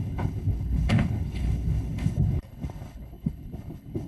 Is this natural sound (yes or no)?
no